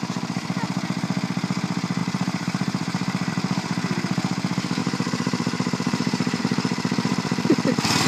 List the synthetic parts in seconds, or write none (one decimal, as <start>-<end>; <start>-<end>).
2.0-3.3; 4.8-6.4